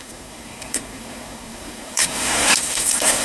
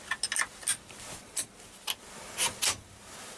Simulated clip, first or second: first